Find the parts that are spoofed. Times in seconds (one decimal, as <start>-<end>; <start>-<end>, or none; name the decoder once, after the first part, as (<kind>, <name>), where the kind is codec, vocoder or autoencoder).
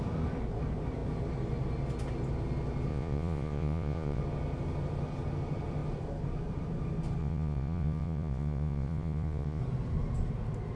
2.9-4.2 (vocoder, Vocos); 7.2-9.6